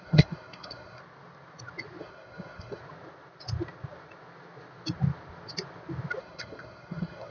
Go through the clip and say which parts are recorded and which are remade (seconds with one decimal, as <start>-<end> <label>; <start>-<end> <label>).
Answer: 0.0-1.0 remade; 1.0-2.0 recorded; 2.0-2.8 remade; 2.8-6.2 recorded; 6.2-7.3 remade